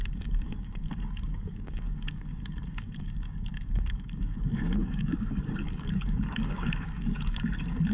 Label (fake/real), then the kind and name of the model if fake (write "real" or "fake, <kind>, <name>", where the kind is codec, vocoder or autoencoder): fake, codec, DAC